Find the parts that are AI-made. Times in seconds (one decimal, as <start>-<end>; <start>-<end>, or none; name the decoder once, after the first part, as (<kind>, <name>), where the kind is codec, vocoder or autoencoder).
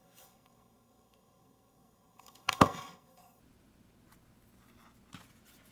0.0-3.4 (codec, SNAC)